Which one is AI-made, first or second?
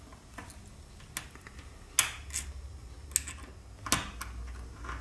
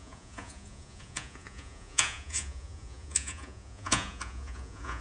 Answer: second